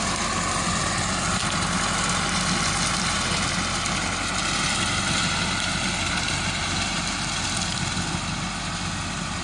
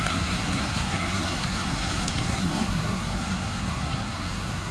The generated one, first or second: second